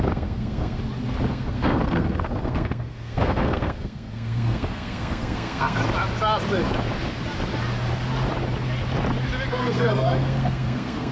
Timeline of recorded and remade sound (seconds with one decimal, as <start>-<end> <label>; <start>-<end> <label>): 0.0-0.8 remade; 0.8-1.3 recorded; 1.3-5.8 remade; 5.8-9.5 recorded; 9.5-11.1 remade